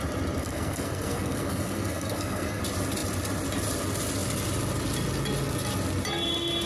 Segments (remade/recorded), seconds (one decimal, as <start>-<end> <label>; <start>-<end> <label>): 0.0-0.4 recorded; 0.4-2.6 remade; 2.6-6.7 recorded